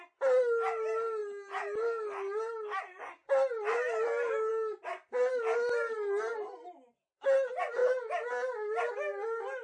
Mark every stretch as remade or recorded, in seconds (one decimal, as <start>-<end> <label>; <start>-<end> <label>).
0.0-9.6 recorded